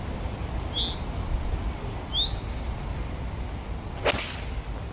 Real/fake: real